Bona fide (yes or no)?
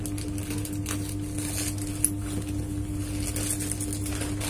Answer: yes